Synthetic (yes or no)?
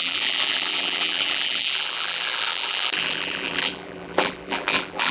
yes